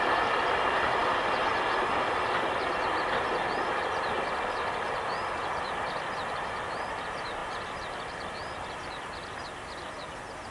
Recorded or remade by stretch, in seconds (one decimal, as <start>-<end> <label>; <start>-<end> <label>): 0.0-10.5 recorded